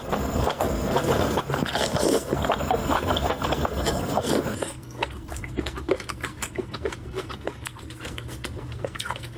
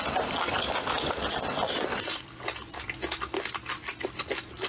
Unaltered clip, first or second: second